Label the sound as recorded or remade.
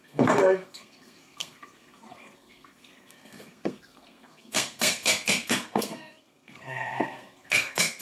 remade